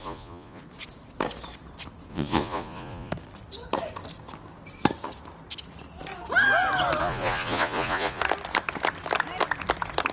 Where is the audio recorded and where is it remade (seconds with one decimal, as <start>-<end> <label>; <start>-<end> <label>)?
0.0-0.6 remade; 0.6-2.1 recorded; 2.1-3.1 remade; 3.1-7.0 recorded; 7.0-8.2 remade; 8.2-10.1 recorded